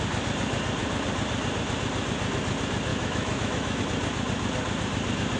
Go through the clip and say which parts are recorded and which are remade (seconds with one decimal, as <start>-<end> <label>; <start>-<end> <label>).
0.0-2.9 recorded; 2.9-3.8 remade; 3.8-5.4 recorded